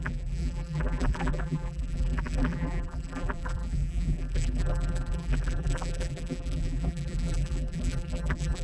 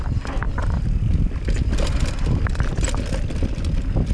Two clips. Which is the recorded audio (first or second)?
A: second